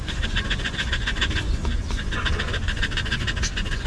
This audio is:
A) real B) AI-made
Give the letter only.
B